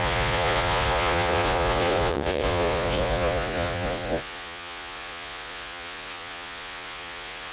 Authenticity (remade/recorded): remade